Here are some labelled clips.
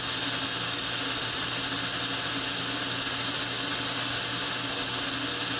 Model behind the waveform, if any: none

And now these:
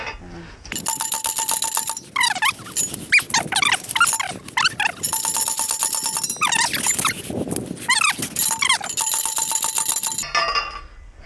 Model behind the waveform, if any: none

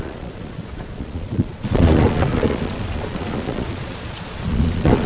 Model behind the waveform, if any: vocoder, Vocos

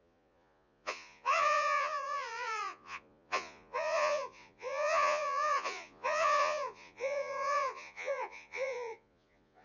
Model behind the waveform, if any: vocoder, Vocos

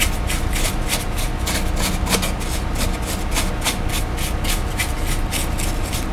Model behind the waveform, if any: none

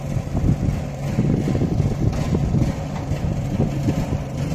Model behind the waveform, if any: none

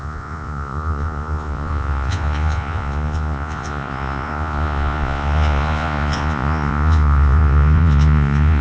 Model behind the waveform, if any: vocoder, Vocos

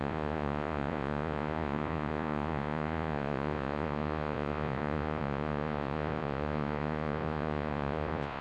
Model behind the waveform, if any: vocoder, Vocos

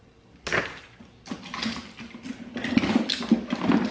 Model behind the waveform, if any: none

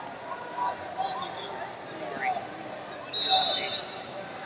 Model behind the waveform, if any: none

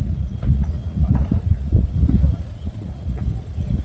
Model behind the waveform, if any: vocoder, Vocos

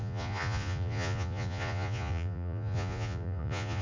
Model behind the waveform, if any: vocoder, Vocos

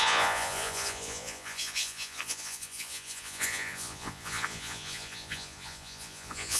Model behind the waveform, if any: vocoder, Vocos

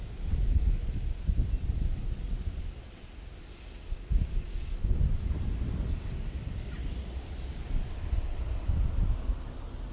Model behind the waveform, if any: none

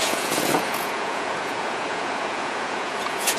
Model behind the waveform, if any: vocoder, Vocos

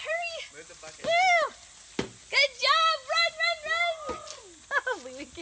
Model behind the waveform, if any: none